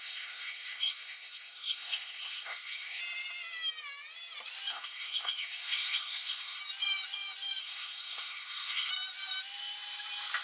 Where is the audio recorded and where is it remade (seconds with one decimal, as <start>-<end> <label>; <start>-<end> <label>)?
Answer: 0.0-3.0 remade; 3.0-4.7 recorded; 4.7-6.6 remade; 6.6-7.6 recorded; 7.6-8.9 remade; 8.9-10.4 recorded